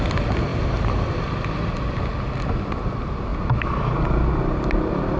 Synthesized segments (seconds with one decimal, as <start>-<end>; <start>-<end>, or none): none